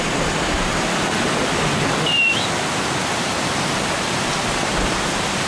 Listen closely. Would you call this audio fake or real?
real